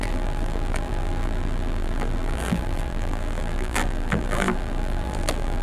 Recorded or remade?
remade